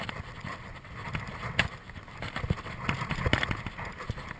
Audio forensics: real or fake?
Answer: real